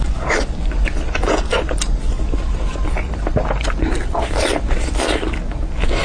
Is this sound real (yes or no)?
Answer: yes